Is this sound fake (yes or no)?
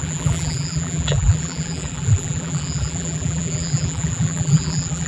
yes